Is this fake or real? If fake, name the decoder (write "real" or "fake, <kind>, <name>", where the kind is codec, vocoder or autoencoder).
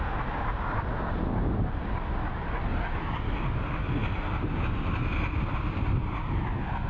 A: fake, vocoder, BigVGAN v2